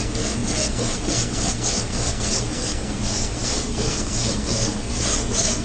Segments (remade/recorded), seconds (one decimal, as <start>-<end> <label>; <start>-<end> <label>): 0.0-5.6 remade

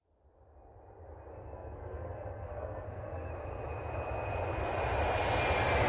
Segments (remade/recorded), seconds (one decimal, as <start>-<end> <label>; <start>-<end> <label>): 0.0-1.3 recorded; 1.3-3.3 remade; 3.3-5.9 recorded

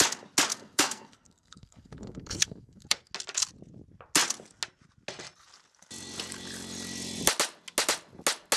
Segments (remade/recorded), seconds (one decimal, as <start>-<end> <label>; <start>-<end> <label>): 0.0-0.5 recorded; 0.5-3.1 remade; 3.1-8.6 recorded

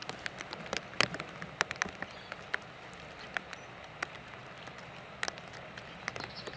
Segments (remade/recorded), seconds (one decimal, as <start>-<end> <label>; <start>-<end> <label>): 0.0-6.6 recorded

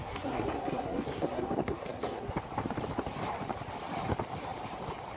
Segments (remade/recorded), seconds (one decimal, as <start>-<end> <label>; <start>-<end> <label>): 0.0-2.4 remade; 2.4-5.2 recorded

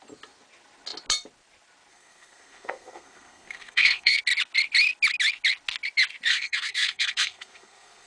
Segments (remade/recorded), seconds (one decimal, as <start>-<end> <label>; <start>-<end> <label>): 0.0-1.9 recorded; 1.9-4.2 remade; 4.2-6.3 recorded; 6.3-8.1 remade

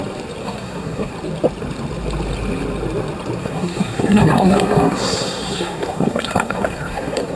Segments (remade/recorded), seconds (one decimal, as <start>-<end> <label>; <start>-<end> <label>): 0.0-0.4 recorded; 0.4-1.1 remade; 1.1-3.4 recorded; 3.4-7.4 remade